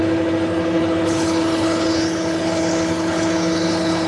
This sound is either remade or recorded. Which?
remade